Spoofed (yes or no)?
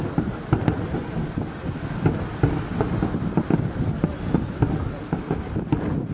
no